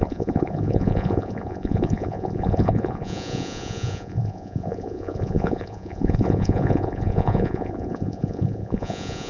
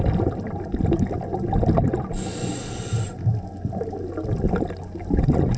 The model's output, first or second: first